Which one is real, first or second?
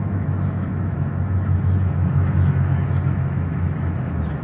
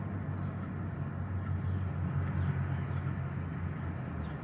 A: second